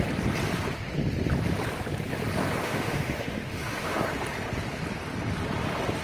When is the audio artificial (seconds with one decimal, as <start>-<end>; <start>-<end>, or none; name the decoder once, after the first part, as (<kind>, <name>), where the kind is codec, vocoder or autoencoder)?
2.6-4.0 (autoencoder, DAC-VAE)